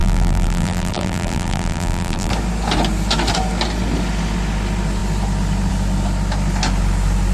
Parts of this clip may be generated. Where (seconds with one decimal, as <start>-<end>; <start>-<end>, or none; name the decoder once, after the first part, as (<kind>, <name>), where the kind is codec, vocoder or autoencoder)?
0.0-2.3 (vocoder, BigVGAN v2)